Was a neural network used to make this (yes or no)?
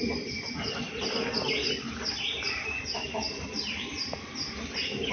no